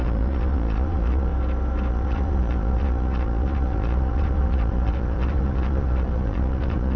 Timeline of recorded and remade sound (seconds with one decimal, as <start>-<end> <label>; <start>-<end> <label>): 0.0-1.3 remade; 1.3-1.9 recorded; 1.9-7.0 remade